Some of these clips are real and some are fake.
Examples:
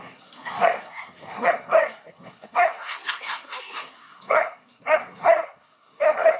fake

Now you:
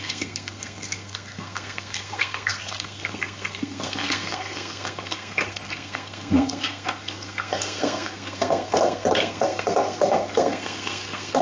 fake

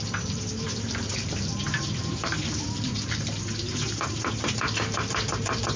fake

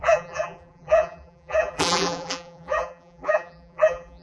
fake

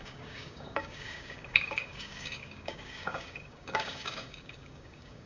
fake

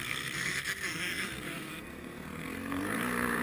fake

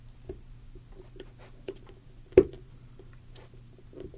real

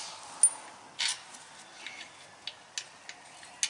real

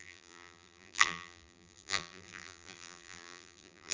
fake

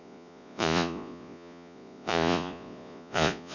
fake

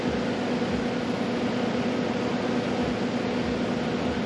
real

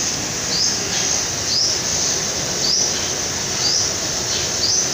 real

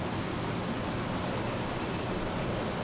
real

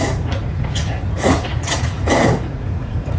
fake